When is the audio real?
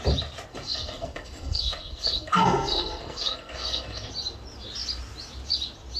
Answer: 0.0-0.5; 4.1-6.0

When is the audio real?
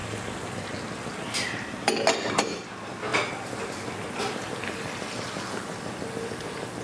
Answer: 0.0-6.8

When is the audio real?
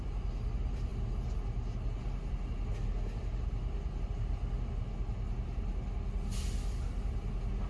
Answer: 0.0-7.7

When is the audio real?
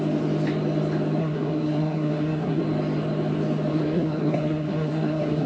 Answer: 0.0-1.2; 2.6-3.7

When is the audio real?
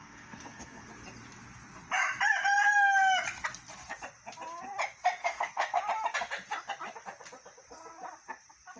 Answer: 0.9-5.2; 5.8-8.8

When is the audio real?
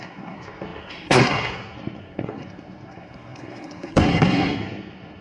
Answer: none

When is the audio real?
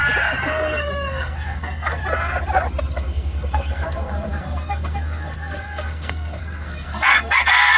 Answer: 0.0-0.5; 2.0-2.9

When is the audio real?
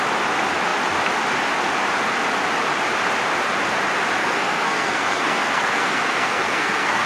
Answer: 0.0-4.2